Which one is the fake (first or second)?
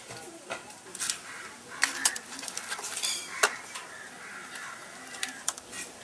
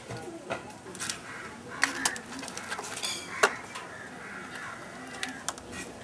first